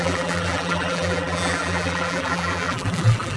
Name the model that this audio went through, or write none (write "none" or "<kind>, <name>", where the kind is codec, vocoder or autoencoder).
vocoder, BigVGAN v2